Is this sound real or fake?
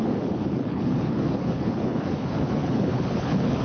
fake